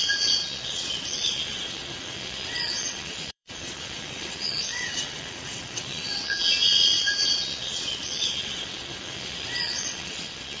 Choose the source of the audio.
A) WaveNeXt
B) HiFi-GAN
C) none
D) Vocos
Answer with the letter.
A